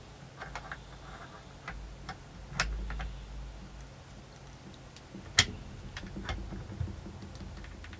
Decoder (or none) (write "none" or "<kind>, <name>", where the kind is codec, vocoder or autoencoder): none